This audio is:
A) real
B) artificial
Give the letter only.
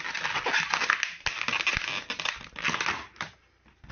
A